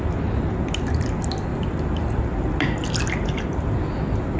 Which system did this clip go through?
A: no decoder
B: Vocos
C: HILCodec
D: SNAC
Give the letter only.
A